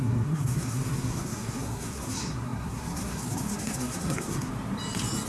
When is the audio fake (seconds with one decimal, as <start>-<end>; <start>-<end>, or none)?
0.0-4.5